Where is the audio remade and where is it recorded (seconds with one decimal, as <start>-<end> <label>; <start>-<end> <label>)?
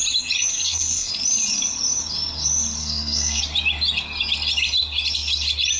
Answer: 0.0-0.5 recorded; 0.5-1.1 remade; 1.1-2.8 recorded; 2.8-3.4 remade; 3.4-5.8 recorded